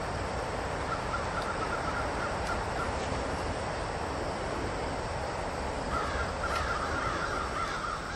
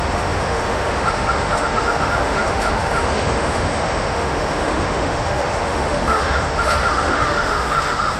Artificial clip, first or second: second